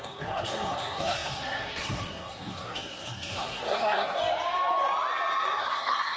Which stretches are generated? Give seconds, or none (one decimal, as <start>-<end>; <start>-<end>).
0.0-4.2; 5.6-6.2